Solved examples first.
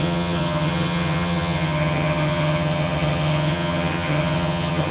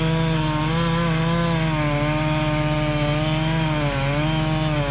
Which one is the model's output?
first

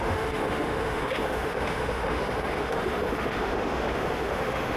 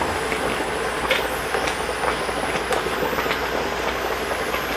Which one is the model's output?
first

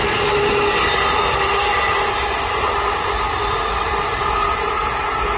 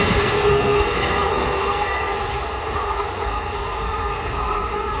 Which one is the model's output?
second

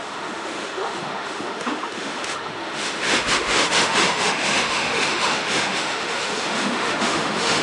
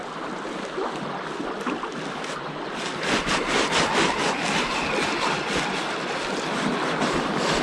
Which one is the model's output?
first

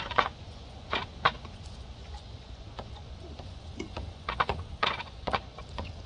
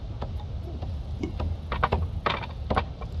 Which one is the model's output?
first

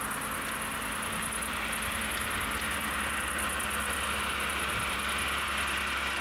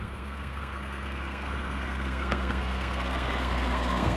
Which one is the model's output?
second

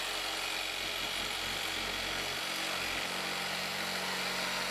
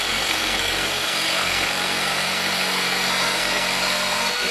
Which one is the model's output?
second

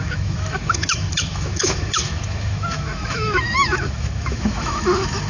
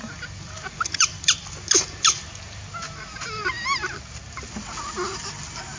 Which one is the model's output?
first